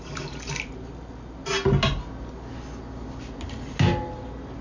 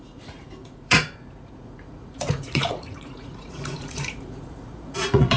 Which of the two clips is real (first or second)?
first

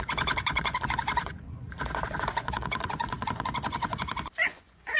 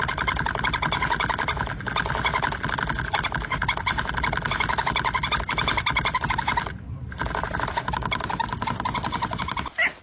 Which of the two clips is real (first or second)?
second